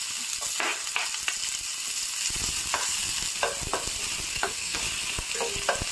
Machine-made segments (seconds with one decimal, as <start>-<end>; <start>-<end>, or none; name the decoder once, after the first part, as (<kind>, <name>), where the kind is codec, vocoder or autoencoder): 4.3-4.8 (codec, SNAC)